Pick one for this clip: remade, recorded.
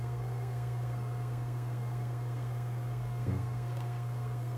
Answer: remade